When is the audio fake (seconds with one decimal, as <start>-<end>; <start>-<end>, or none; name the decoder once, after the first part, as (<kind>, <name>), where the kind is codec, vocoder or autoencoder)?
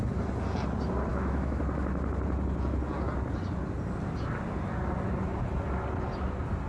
1.1-1.6 (autoencoder, DAC-VAE)